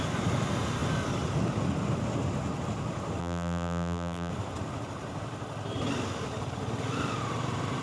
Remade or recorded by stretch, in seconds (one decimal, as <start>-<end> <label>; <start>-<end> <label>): 0.0-3.2 recorded; 3.2-4.3 remade; 4.3-7.8 recorded